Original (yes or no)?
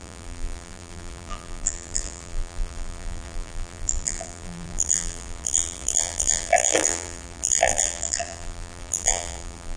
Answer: no